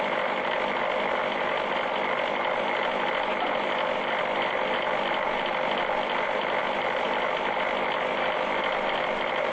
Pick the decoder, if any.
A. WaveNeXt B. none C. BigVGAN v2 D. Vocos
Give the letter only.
B